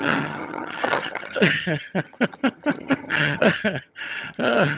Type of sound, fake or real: fake